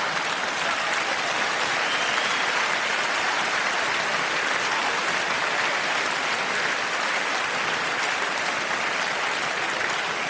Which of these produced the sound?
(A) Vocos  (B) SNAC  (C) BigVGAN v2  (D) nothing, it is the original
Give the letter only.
D